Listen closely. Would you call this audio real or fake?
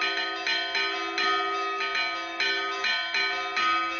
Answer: real